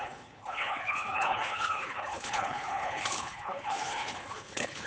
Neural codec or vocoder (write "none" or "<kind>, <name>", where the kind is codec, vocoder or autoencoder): codec, HILCodec